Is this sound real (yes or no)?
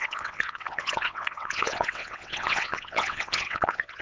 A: no